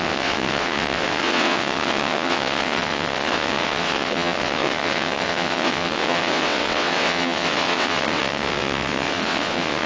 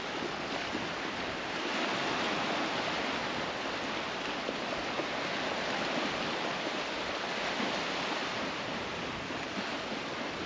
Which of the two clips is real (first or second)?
second